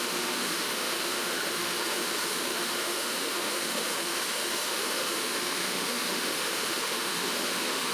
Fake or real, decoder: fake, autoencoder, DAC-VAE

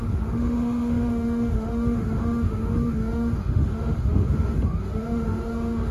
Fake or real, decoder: fake, autoencoder, DAC-VAE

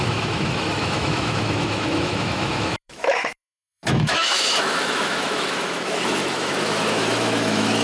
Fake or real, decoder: fake, autoencoder, DAC-VAE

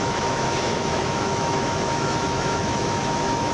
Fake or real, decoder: fake, autoencoder, DAC-VAE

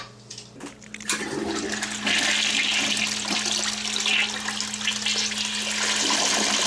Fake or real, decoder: real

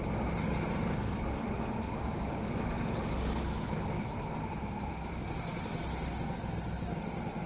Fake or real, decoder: real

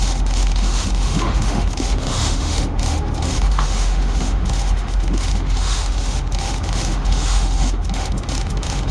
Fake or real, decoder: fake, autoencoder, DAC-VAE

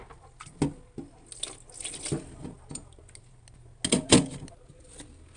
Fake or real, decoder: real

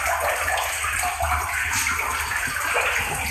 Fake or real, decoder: real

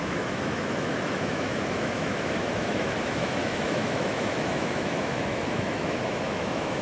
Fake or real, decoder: fake, autoencoder, DAC-VAE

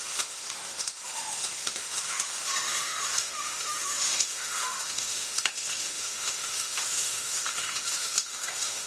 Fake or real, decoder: fake, autoencoder, DAC-VAE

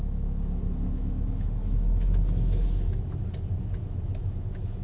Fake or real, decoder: fake, autoencoder, DAC-VAE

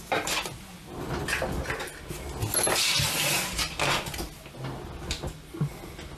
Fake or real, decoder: real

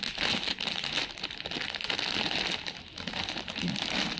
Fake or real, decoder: real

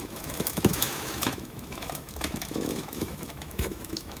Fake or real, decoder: fake, autoencoder, DAC-VAE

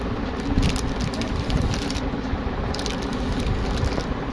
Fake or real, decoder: real